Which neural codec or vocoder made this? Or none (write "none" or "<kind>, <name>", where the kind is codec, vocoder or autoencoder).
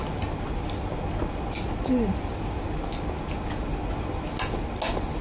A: none